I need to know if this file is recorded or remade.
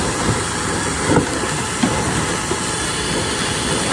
recorded